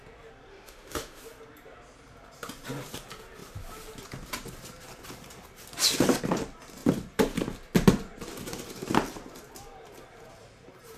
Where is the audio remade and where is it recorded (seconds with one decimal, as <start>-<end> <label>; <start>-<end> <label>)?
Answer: 0.0-0.5 recorded; 0.5-1.2 remade; 1.2-11.0 recorded